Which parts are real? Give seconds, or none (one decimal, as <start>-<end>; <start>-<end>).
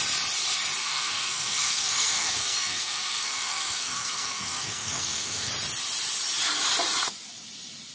0.0-0.8; 5.5-7.9